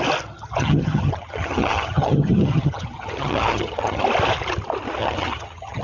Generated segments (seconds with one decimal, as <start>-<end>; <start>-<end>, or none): 0.6-4.0; 5.0-5.8